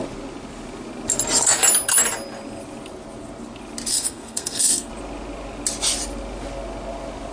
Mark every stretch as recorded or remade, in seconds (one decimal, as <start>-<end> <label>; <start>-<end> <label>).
0.0-3.9 recorded; 3.9-4.9 remade; 4.9-7.3 recorded